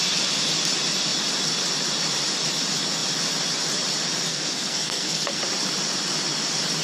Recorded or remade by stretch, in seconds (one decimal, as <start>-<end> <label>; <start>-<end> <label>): 0.0-4.3 recorded; 4.3-5.4 remade; 5.4-6.8 recorded

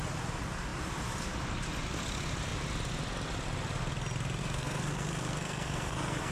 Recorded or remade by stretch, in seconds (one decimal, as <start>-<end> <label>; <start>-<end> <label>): 0.0-4.4 recorded; 4.4-6.3 remade

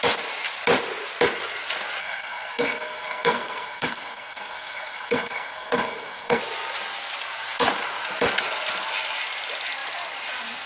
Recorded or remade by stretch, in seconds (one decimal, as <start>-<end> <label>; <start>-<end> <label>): 0.0-2.0 recorded; 2.0-6.4 remade; 6.4-10.7 recorded